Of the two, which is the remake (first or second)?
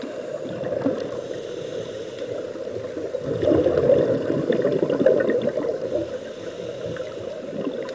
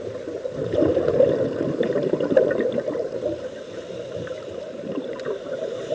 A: second